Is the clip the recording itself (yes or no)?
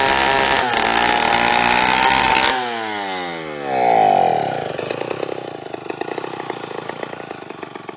yes